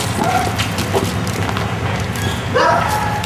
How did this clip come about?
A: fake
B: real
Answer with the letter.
B